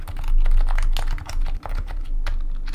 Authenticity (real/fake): real